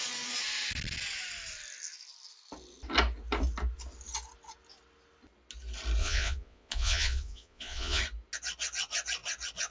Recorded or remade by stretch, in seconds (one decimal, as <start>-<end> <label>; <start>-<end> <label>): 0.0-6.0 recorded; 6.0-8.0 remade; 8.0-9.7 recorded

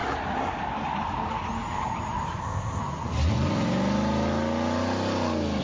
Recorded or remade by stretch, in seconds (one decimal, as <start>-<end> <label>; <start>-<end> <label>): 0.0-2.4 recorded; 2.4-2.8 remade; 2.8-5.6 recorded